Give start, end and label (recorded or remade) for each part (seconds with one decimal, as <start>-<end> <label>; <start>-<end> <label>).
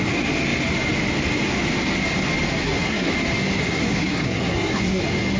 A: 0.0-2.6 recorded; 2.6-3.1 remade; 3.1-3.6 recorded; 3.6-5.0 remade; 5.0-5.4 recorded